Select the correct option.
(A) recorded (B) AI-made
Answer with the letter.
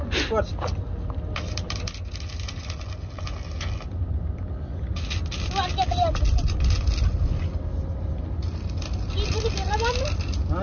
A